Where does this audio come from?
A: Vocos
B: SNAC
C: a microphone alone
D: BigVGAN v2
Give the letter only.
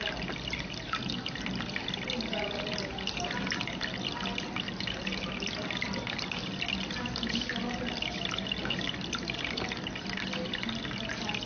C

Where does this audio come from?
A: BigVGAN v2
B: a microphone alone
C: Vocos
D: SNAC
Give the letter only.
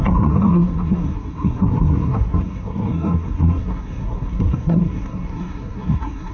D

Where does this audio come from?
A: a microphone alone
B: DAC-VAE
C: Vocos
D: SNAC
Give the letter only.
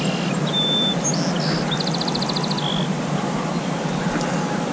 A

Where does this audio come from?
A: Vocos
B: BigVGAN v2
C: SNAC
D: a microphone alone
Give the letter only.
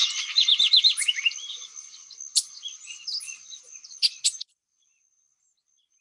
D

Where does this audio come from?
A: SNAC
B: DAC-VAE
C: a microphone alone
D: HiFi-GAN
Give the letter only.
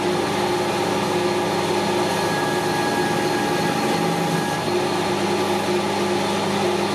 C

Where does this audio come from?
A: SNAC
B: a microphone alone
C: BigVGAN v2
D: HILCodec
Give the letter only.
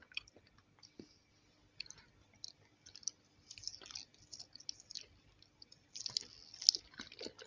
B